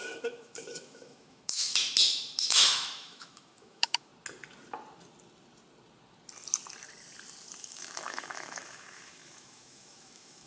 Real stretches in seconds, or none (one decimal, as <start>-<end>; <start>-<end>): 4.1-7.6